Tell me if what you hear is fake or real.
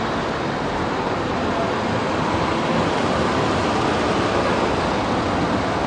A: real